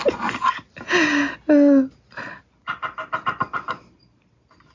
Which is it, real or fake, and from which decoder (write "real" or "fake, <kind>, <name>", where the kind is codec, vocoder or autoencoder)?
real